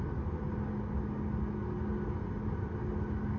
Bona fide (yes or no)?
yes